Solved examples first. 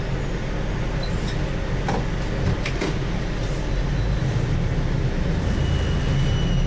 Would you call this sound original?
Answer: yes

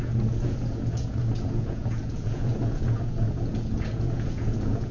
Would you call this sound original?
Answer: no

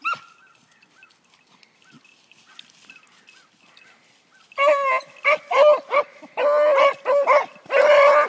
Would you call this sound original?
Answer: yes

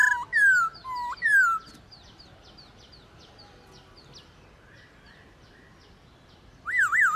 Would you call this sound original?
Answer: yes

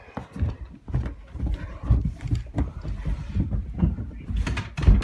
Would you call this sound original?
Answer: yes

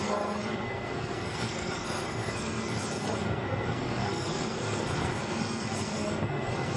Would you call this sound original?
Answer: no